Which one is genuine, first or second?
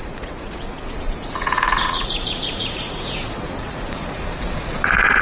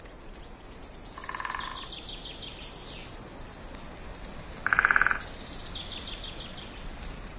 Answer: second